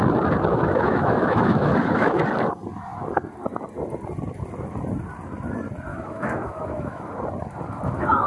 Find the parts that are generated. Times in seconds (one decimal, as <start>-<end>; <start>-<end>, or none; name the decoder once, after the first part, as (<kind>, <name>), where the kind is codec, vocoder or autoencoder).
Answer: 0.5-2.2 (autoencoder, DAC-VAE); 5.9-7.0